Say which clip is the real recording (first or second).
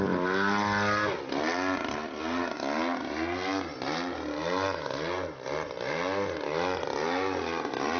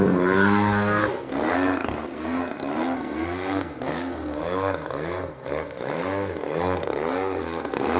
first